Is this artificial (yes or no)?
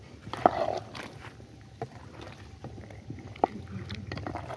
no